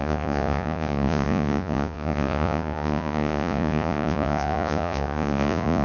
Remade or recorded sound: remade